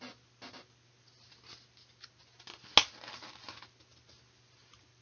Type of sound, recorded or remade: recorded